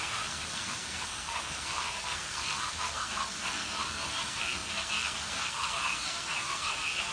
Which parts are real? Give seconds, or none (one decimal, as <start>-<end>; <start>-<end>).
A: none